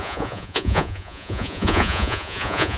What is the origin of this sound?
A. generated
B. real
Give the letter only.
A